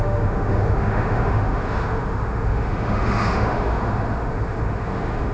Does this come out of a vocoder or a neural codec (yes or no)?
yes